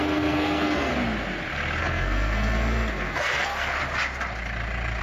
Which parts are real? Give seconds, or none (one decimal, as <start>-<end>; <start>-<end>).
0.9-1.8; 3.8-5.0